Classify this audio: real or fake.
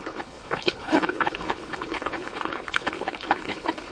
fake